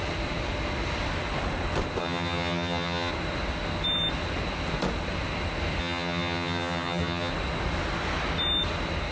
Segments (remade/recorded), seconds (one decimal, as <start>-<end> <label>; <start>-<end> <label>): 0.0-2.0 recorded; 2.0-3.1 remade; 3.1-5.8 recorded; 5.8-7.3 remade; 7.3-9.1 recorded